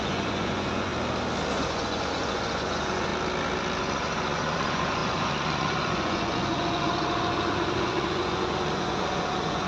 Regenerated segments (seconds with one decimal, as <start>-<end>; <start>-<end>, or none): 0.0-0.9; 1.5-3.1; 3.8-9.7